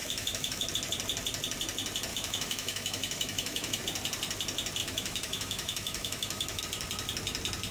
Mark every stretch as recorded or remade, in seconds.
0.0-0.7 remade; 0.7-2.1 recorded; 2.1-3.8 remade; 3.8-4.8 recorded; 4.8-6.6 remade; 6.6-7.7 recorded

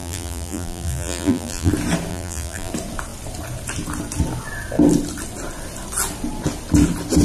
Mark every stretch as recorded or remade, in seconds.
0.0-1.7 remade; 1.7-2.1 recorded; 2.1-2.7 remade; 2.7-7.2 recorded

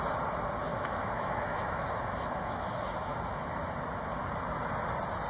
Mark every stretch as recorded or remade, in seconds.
0.0-0.7 recorded; 0.7-3.5 remade; 3.5-5.3 recorded

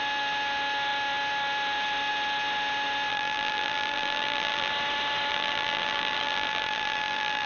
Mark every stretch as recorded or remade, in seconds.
0.0-3.1 recorded; 3.1-4.7 remade; 4.7-5.3 recorded; 5.3-7.5 remade

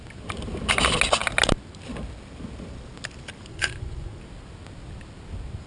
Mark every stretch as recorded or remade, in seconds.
0.0-3.5 recorded; 3.5-4.2 remade; 4.2-5.7 recorded

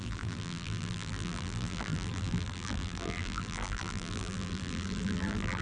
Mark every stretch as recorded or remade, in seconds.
0.0-5.6 remade

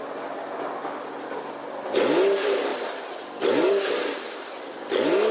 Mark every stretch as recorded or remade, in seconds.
0.0-5.3 recorded